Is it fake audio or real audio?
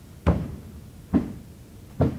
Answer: real